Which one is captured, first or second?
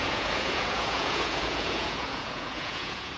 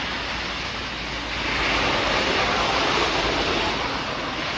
second